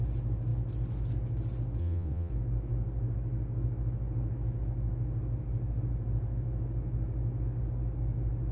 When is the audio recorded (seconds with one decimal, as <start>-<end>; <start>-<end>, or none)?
0.0-1.8; 2.3-8.5

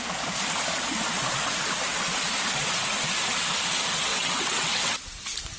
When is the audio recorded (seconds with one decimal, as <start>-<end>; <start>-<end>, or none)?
0.0-4.1; 5.0-5.6